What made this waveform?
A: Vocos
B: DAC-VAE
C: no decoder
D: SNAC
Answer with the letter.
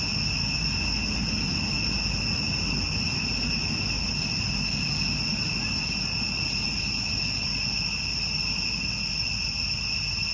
C